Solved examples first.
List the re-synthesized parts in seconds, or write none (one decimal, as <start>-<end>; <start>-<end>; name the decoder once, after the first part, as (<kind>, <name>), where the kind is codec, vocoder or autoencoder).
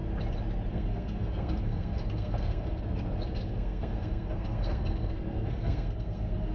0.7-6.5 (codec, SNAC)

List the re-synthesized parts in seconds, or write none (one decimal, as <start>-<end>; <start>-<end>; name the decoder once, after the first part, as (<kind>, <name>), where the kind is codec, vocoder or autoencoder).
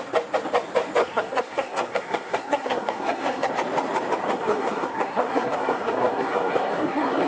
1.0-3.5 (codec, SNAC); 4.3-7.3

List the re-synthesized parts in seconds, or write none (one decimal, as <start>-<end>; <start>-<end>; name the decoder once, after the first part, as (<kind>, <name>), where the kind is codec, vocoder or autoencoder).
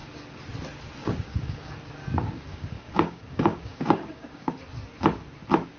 1.0-1.7 (codec, DAC); 2.5-4.5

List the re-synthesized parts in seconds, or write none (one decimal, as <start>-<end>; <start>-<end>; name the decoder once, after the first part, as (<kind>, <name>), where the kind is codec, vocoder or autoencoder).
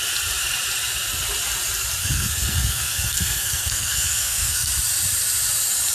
2.0-4.7 (codec, SNAC)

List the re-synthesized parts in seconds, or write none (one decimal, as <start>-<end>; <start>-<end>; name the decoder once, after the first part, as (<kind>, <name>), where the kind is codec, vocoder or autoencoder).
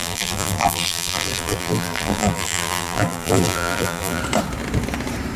0.0-4.2 (vocoder, BigVGAN v2)